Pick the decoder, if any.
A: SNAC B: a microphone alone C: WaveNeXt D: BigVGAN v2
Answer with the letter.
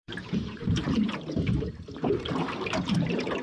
D